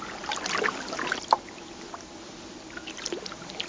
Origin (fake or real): real